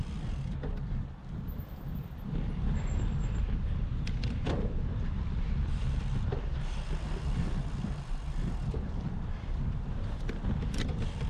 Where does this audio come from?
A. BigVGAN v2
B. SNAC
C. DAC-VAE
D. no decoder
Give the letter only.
A